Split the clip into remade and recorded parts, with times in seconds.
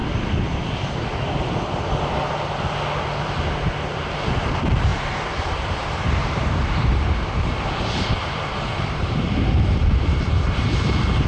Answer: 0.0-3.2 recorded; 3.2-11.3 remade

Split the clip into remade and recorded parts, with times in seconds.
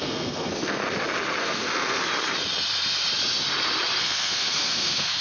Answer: 0.0-0.8 remade; 0.8-1.4 recorded; 1.4-2.0 remade; 2.0-4.0 recorded; 4.0-5.2 remade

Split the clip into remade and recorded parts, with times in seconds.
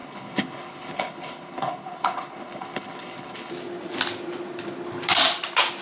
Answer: 0.0-3.5 remade; 3.5-5.8 recorded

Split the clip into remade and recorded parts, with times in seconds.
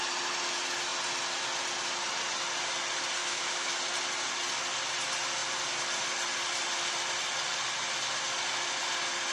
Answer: 0.0-3.2 recorded; 3.2-3.8 remade; 3.8-9.3 recorded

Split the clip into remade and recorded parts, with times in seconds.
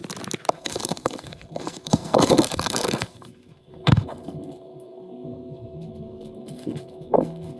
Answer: 0.0-0.5 recorded; 0.5-7.6 remade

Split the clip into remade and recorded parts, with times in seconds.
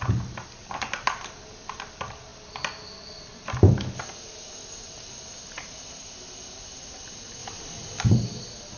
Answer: 0.0-8.8 recorded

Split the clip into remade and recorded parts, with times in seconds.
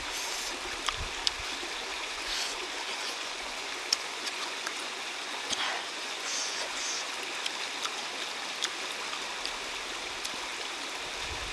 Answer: 0.0-1.9 recorded; 1.9-7.1 remade; 7.1-11.5 recorded